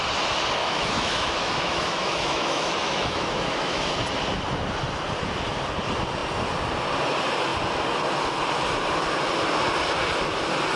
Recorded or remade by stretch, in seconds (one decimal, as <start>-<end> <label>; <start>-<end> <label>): 0.0-0.6 recorded; 0.6-3.9 remade; 3.9-10.8 recorded